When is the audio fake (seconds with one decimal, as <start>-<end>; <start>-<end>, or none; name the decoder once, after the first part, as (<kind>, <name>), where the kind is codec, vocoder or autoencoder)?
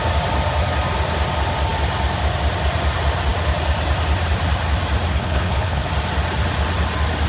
5.1-5.9 (codec, HILCodec)